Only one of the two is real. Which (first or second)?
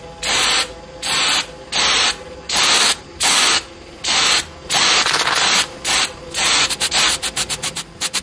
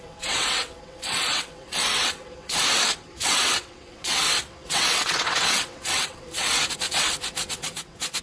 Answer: first